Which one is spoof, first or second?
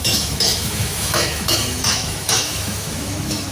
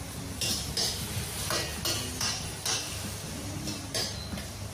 first